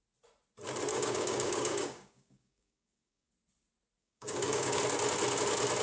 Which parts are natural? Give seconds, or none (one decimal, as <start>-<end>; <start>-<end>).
0.0-0.9; 3.3-4.0; 4.8-5.8